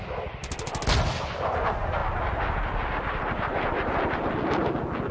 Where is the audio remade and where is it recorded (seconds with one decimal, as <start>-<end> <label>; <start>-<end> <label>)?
0.0-5.1 recorded